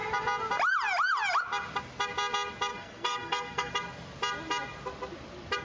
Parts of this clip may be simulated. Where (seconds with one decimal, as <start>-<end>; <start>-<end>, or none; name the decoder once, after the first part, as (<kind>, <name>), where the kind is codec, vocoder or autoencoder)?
2.7-3.7 (codec, SNAC)